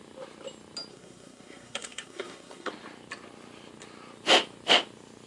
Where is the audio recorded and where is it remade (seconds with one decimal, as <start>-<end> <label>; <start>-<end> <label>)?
0.0-0.9 recorded; 0.9-2.7 remade; 2.7-5.3 recorded